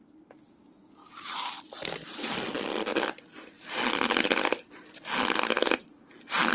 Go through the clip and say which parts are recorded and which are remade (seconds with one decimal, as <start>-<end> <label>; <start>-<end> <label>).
0.0-1.0 recorded; 1.0-1.5 remade; 1.5-6.5 recorded